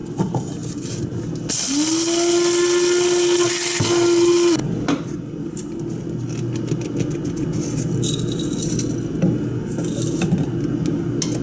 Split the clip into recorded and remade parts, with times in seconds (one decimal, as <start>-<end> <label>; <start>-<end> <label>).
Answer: 0.0-11.4 recorded